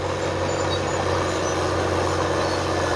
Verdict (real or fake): real